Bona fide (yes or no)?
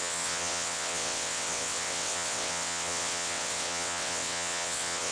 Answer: no